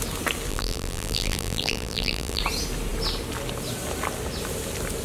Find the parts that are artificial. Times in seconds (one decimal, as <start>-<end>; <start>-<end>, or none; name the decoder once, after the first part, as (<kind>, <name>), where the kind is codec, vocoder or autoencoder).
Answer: 0.5-2.4 (vocoder, BigVGAN v2)